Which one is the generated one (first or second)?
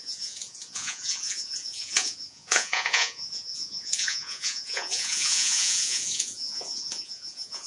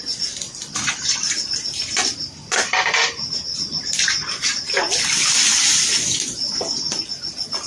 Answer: first